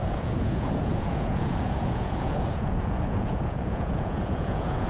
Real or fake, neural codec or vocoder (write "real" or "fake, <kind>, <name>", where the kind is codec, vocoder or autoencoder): fake, vocoder, Vocos